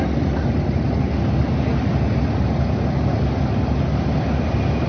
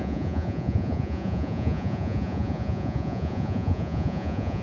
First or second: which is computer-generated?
second